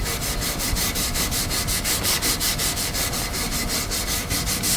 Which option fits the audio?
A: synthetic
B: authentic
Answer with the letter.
B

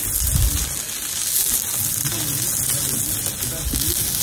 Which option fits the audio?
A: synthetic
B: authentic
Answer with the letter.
B